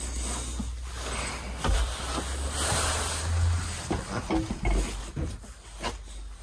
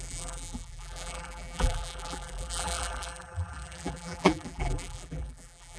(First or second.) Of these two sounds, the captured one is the first